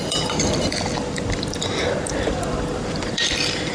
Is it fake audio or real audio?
fake